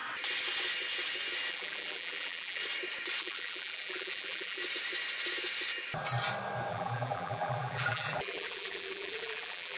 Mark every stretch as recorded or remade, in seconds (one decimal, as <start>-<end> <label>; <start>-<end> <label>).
0.0-1.5 recorded; 1.5-2.6 remade; 2.6-3.2 recorded; 3.2-4.6 remade; 4.6-6.7 recorded; 6.7-9.8 remade